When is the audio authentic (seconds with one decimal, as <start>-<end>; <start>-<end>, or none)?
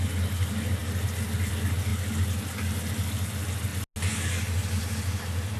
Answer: 0.0-5.6